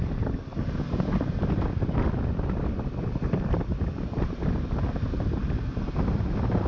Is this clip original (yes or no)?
yes